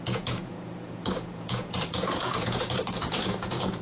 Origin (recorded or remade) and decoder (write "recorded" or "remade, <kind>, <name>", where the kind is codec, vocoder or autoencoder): remade, vocoder, Vocos